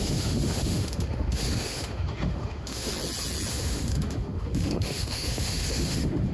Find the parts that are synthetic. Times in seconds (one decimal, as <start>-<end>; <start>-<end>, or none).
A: 0.0-2.9; 3.5-6.3